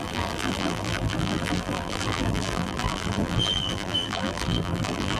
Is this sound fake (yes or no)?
yes